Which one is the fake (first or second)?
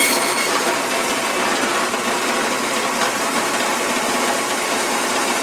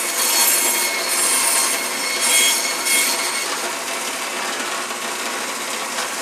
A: first